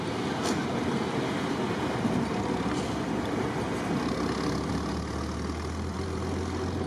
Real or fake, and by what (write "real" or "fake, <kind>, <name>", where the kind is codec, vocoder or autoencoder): real